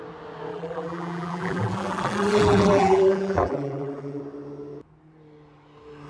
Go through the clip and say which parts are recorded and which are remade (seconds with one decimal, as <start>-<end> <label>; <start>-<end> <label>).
0.0-0.5 recorded; 0.5-4.2 remade; 4.2-6.1 recorded